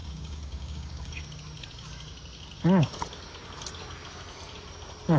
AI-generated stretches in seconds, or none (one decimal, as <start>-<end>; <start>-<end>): 0.0-1.2